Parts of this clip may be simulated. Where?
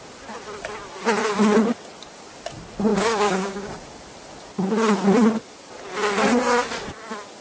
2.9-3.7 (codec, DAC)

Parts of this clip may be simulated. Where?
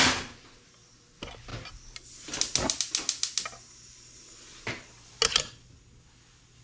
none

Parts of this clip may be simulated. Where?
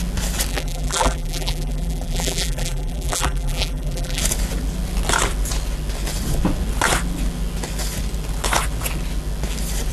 0.5-4.2 (vocoder, BigVGAN v2)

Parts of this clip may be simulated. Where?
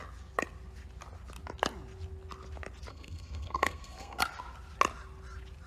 2.9-4.2 (codec, SNAC)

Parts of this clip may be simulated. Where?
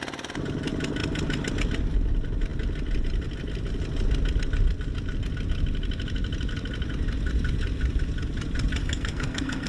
8.8-9.7 (codec, SNAC)